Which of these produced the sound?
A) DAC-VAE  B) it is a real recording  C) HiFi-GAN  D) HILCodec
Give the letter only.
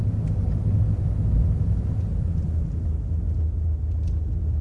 B